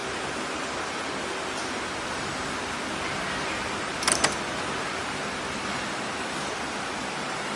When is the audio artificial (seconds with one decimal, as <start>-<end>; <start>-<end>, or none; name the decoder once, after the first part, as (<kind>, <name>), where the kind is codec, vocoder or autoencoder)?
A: none